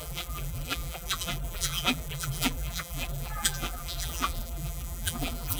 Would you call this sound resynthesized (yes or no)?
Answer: yes